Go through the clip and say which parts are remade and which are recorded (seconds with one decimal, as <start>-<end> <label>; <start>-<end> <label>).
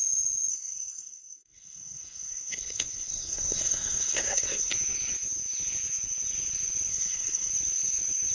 0.0-0.5 recorded; 0.5-4.7 remade; 4.7-6.9 recorded; 6.9-7.5 remade; 7.5-8.3 recorded